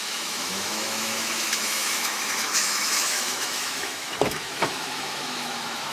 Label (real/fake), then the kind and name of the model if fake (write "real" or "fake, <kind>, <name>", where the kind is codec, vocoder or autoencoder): fake, autoencoder, DAC-VAE